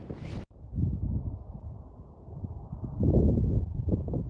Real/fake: real